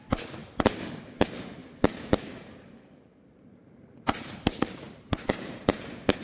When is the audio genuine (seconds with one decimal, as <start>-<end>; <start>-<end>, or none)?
0.0-1.6; 5.3-6.2